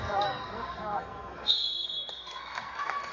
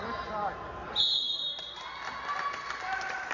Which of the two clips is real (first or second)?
second